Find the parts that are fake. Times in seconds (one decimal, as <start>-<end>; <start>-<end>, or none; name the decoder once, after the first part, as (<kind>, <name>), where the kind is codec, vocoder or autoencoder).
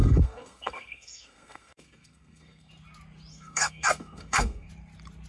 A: 0.0-2.7 (codec, SNAC); 3.3-4.7